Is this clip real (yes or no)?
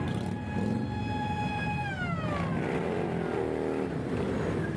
yes